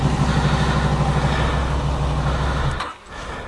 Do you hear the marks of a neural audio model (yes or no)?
no